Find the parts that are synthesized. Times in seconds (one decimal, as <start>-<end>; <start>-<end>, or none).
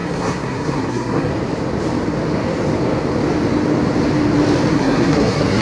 0.0-1.3; 4.7-5.6